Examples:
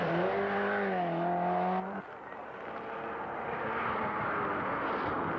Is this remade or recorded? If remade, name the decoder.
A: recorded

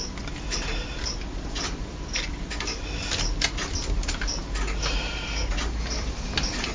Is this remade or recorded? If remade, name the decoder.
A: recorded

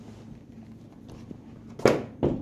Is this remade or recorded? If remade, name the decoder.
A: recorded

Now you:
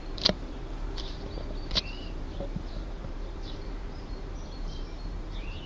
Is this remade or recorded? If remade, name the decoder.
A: remade, vocoder, BigVGAN v2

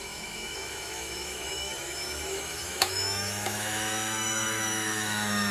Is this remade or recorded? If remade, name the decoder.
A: remade, autoencoder, DAC-VAE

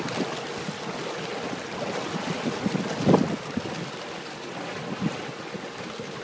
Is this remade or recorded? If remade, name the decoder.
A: recorded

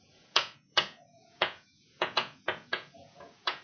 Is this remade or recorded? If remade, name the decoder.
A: remade, vocoder, Vocos